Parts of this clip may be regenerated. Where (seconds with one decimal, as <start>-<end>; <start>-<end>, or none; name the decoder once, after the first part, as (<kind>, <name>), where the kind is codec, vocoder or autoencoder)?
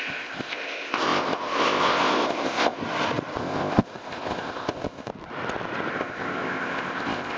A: 0.0-2.8 (codec, ZipCodec); 3.4-5.1; 5.9-7.4